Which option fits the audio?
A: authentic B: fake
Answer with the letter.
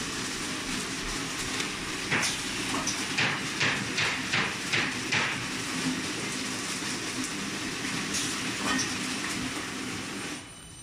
A